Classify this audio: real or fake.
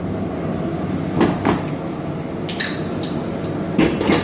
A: real